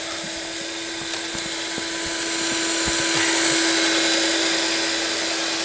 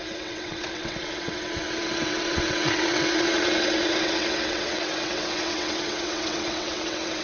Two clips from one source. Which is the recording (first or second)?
first